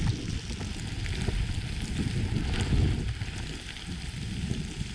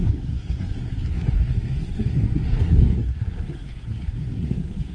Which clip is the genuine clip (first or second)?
first